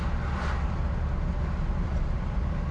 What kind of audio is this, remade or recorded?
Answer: recorded